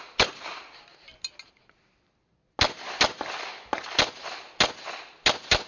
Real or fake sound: real